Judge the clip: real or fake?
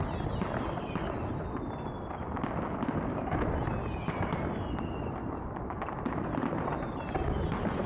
real